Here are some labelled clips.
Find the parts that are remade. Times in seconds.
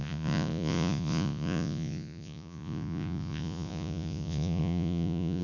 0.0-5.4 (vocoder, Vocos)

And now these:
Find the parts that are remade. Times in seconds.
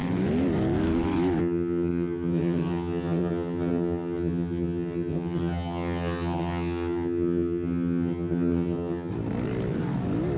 1.4-9.1 (vocoder, HiFi-GAN)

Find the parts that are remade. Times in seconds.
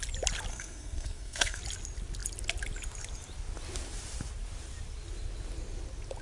0.5-1.6 (codec, SNAC)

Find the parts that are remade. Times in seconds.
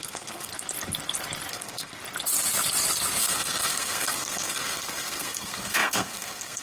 0.0-0.5 (codec, SNAC); 1.5-1.9; 3.2-6.6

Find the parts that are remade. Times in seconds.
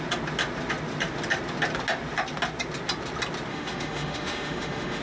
3.5-5.0 (autoencoder, DAC-VAE)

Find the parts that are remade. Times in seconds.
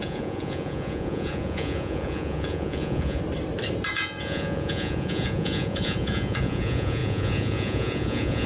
0.0-3.2 (vocoder, Vocos); 3.9-8.5